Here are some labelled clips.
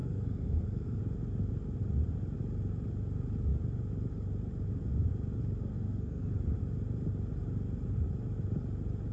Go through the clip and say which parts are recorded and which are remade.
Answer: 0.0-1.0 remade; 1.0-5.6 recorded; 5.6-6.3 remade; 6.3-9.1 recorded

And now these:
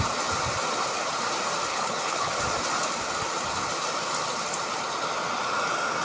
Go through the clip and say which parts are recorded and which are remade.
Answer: 0.0-1.7 recorded; 1.7-2.3 remade; 2.3-6.0 recorded

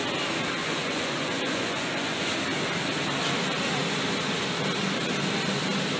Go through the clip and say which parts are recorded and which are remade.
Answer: 0.0-0.6 recorded; 0.6-2.3 remade; 2.3-6.0 recorded